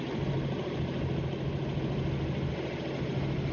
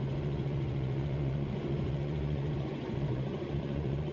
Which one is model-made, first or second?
second